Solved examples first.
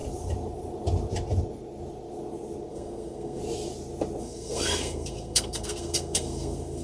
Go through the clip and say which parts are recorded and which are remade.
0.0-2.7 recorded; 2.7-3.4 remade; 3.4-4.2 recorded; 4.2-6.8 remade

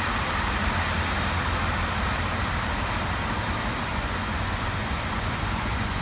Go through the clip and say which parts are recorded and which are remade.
0.0-3.9 recorded; 3.9-6.0 remade

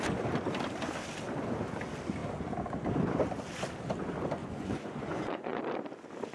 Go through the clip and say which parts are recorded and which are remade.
0.0-4.4 recorded; 4.4-5.6 remade; 5.6-6.3 recorded

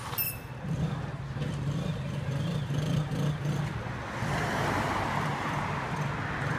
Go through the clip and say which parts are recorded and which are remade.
0.0-6.6 recorded

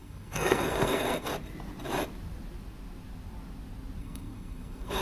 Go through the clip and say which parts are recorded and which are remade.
0.0-1.3 remade; 1.3-4.0 recorded; 4.0-5.0 remade

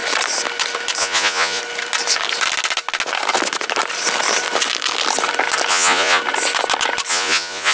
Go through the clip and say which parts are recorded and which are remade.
0.0-1.0 recorded; 1.0-1.6 remade; 1.6-5.7 recorded; 5.7-6.2 remade; 6.2-7.1 recorded; 7.1-7.7 remade

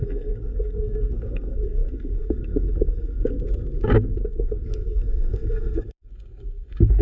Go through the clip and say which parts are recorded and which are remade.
0.0-7.0 remade

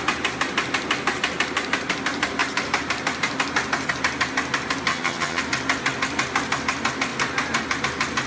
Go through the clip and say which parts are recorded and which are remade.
0.0-4.9 recorded; 4.9-5.4 remade; 5.4-8.3 recorded